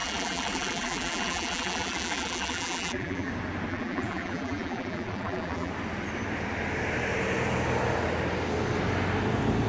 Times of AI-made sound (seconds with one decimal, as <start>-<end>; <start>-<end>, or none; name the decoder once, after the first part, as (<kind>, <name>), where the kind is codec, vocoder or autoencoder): 0.0-3.3 (vocoder, BigVGAN v2); 3.7-5.7

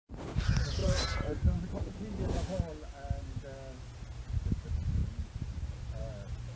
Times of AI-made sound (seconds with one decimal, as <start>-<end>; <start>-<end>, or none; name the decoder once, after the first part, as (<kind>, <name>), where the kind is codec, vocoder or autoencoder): 0.8-1.7 (vocoder, BigVGAN v2); 5.0-5.9

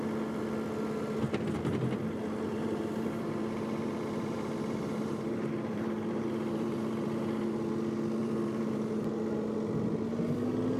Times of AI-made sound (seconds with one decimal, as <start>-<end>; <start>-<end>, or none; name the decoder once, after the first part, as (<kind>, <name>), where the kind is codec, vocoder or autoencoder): 2.5-7.7 (vocoder, BigVGAN v2); 8.2-9.0

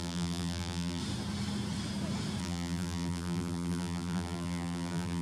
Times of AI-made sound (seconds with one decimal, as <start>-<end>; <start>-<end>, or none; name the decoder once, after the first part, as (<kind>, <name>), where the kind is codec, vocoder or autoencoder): 0.0-1.0 (vocoder, BigVGAN v2); 2.4-5.2

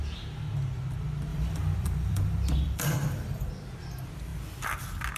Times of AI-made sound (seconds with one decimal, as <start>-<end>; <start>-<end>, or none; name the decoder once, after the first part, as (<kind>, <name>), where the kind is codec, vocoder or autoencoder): 1.3-3.5 (vocoder, BigVGAN v2)

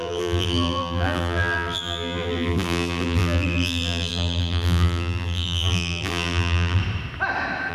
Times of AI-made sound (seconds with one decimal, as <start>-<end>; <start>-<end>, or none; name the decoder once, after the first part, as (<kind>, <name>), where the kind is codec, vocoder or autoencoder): 0.0-6.8 (vocoder, BigVGAN v2)

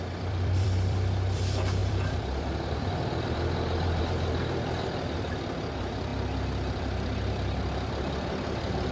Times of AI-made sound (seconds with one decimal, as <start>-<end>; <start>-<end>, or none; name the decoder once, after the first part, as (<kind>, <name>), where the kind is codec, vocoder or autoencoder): 0.0-6.1 (vocoder, BigVGAN v2); 6.7-8.9

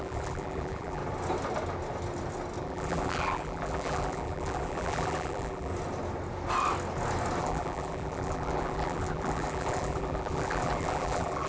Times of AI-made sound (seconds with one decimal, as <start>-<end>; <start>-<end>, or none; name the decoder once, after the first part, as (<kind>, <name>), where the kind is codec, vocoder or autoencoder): 0.0-1.0 (vocoder, BigVGAN v2); 2.6-5.7; 7.4-11.5